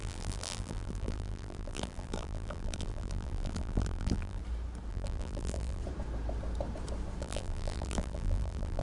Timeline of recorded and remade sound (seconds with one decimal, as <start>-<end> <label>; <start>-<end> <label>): 0.0-4.4 remade; 4.4-4.9 recorded; 4.9-5.8 remade; 5.8-7.2 recorded; 7.2-8.8 remade